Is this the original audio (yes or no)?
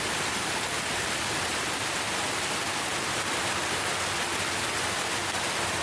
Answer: yes